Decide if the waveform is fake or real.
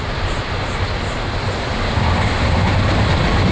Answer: real